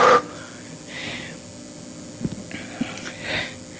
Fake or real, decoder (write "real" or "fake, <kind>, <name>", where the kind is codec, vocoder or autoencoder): real